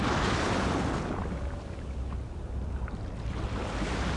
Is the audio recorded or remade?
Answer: recorded